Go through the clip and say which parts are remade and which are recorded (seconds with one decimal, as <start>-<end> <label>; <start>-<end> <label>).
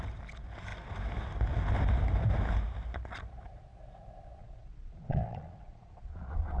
0.0-4.4 recorded; 4.4-6.6 remade